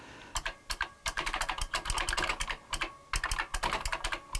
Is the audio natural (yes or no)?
yes